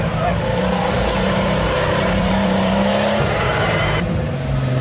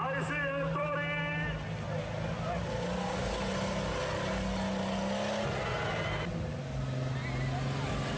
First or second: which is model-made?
first